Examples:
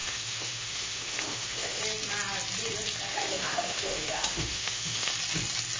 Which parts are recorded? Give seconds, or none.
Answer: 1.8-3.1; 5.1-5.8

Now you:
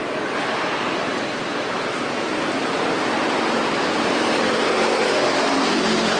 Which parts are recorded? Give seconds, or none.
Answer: 0.0-3.7

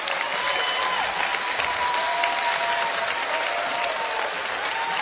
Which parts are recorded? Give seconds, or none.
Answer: 0.0-1.3; 4.3-5.0

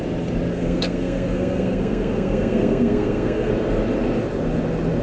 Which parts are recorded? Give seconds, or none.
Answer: 0.0-0.5; 3.5-5.0

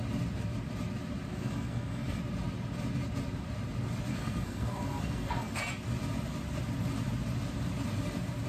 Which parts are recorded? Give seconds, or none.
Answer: 0.0-1.3; 2.2-4.1; 5.6-8.5

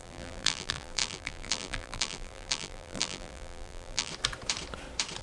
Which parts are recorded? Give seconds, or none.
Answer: 4.1-5.2

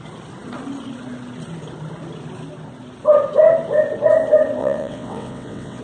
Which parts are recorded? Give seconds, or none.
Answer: 0.0-4.6